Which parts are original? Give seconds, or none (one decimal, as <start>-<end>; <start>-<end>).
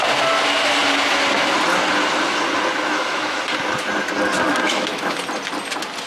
0.0-2.9; 3.4-4.5; 5.2-6.1